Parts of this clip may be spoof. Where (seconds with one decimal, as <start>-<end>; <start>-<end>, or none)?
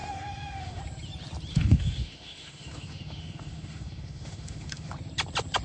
0.0-0.8; 1.5-4.9